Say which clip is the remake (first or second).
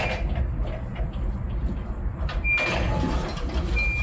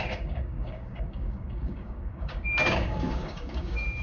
second